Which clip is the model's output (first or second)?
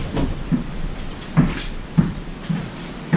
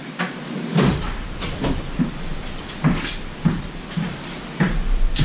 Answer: first